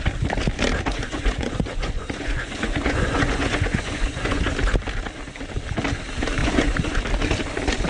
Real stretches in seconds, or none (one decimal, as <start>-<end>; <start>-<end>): 0.0-0.9; 4.4-6.4; 7.0-7.9